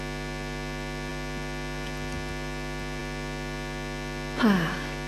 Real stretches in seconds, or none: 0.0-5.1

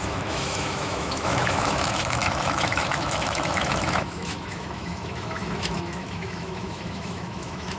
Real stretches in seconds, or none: none

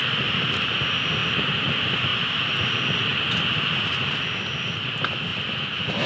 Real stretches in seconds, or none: 0.0-6.1

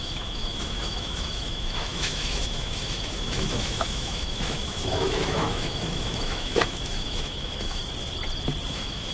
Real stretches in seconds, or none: 7.8-8.7

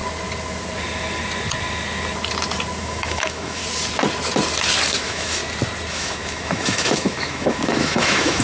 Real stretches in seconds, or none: 0.0-2.8; 3.6-4.9; 5.4-5.9

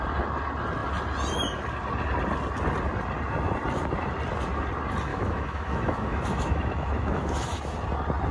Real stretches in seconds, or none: 0.0-5.1; 7.6-8.3